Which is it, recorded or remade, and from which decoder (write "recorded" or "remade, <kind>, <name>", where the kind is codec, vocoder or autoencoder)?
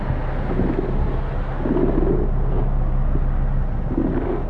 recorded